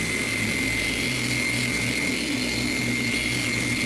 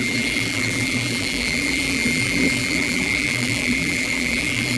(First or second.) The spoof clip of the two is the second